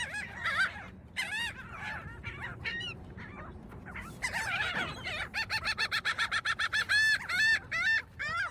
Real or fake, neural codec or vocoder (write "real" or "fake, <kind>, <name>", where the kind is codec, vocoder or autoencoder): fake, vocoder, BigVGAN v2